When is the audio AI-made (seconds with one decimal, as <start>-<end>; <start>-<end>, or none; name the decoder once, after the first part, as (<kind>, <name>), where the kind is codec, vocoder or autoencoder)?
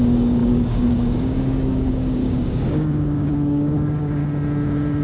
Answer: 0.0-4.2 (codec, DAC)